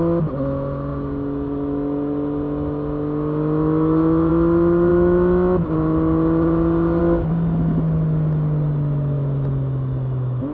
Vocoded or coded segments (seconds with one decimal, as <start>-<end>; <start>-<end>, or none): none